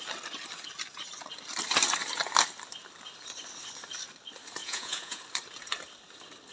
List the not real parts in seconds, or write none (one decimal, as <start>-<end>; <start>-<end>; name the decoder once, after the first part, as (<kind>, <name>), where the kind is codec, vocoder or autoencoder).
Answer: 4.6-5.2 (vocoder, Vocos)